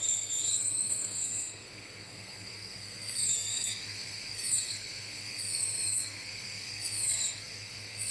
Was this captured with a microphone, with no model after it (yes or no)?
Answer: no